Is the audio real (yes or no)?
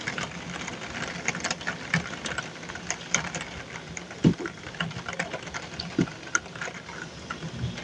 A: yes